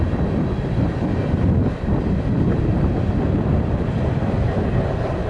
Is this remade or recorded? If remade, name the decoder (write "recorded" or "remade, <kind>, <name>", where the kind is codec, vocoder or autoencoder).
recorded